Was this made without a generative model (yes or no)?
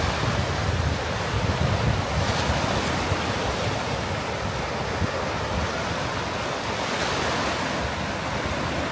yes